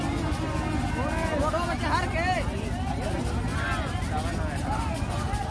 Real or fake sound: real